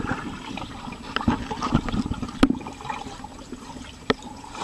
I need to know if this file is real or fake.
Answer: real